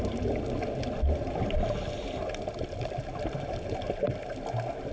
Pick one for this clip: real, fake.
real